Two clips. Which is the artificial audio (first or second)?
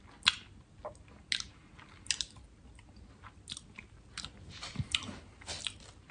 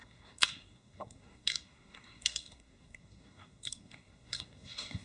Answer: second